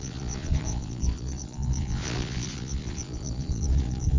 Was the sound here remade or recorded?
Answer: remade